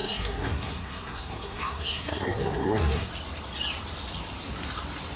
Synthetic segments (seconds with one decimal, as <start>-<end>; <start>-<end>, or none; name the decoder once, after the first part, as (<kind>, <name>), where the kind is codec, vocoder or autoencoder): 0.0-3.1 (codec, SNAC)